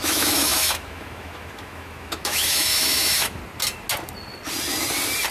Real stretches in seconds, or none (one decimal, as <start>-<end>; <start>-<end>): 3.4-5.3